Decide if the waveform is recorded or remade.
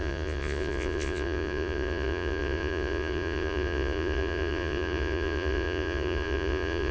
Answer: remade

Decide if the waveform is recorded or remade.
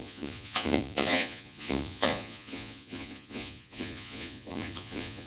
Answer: remade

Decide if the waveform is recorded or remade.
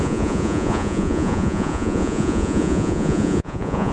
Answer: remade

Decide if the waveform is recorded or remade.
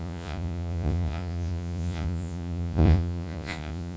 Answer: remade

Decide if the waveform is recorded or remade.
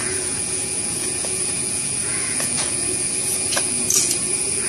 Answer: remade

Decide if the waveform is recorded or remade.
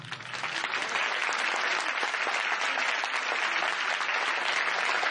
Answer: recorded